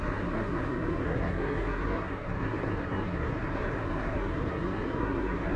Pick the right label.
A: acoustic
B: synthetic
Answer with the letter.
B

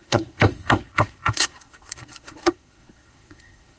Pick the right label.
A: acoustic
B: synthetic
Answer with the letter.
B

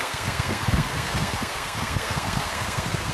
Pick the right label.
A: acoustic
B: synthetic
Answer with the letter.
B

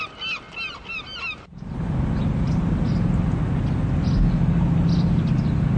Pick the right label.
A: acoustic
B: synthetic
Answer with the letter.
A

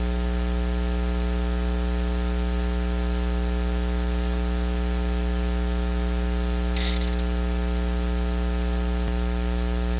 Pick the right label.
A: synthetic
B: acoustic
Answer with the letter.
B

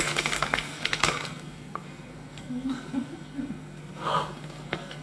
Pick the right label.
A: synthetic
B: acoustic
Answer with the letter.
A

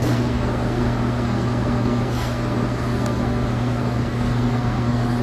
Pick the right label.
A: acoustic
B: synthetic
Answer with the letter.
B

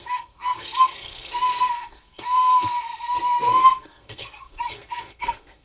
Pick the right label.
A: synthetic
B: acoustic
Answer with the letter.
A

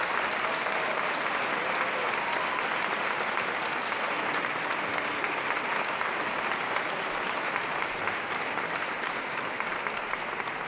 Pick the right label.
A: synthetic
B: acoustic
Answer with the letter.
B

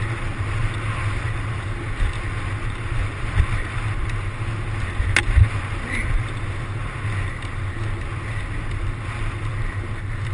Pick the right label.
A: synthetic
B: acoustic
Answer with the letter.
B